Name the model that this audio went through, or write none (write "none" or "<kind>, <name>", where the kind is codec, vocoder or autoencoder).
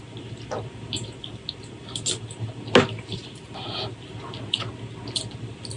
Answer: none